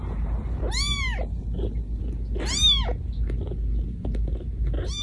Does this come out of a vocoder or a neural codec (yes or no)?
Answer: no